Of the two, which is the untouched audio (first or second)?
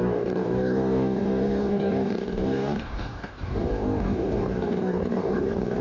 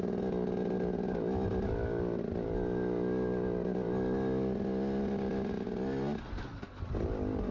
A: second